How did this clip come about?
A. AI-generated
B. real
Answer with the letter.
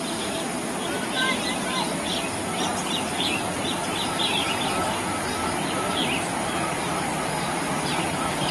A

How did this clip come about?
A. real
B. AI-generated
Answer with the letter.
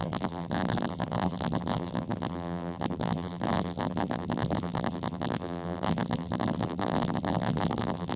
B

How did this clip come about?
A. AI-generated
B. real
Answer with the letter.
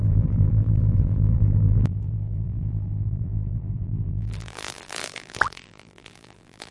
A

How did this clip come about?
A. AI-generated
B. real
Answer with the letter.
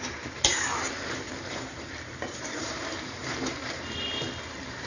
A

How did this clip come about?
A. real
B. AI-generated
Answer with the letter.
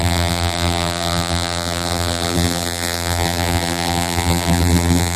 B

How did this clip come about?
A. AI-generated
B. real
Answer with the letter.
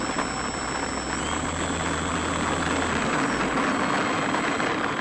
B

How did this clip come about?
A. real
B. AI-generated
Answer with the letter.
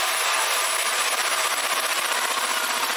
B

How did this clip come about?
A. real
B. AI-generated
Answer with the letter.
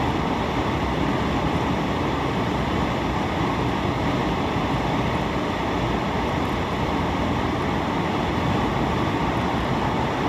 A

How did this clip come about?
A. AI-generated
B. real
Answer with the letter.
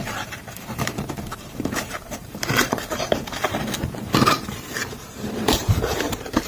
A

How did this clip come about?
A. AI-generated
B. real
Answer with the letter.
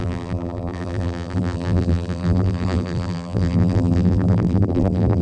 A